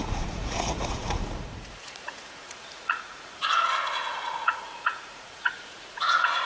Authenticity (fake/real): fake